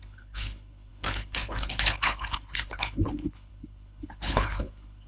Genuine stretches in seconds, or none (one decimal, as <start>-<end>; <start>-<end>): none